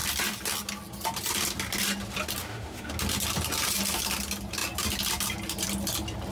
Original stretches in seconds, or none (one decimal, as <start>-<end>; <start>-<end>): 0.0-2.4; 2.9-6.3